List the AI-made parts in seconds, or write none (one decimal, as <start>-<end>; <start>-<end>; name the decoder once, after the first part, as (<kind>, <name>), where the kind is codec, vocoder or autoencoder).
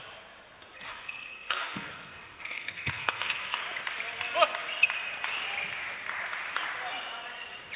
0.9-3.6 (codec, SNAC)